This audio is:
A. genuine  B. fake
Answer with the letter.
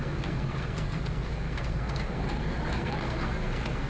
B